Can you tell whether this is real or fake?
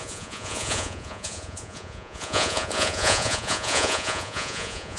fake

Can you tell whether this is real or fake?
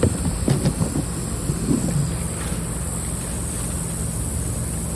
real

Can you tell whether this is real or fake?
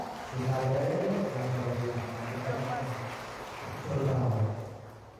real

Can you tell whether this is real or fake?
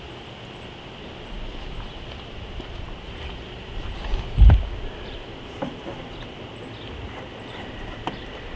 real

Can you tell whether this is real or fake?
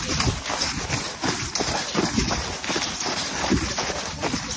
fake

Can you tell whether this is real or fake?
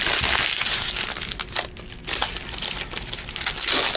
real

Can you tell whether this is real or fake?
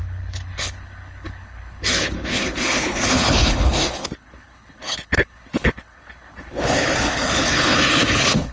fake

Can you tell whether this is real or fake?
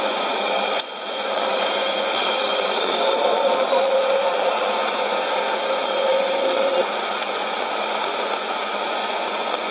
fake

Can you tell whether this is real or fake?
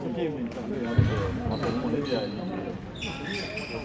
real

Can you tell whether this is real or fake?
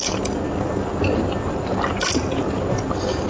real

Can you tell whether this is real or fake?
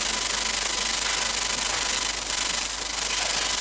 real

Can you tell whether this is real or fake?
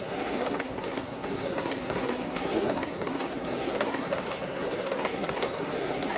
fake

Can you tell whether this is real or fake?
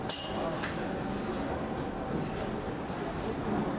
real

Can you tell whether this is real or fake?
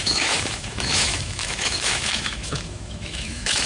fake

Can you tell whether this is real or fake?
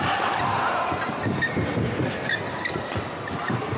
real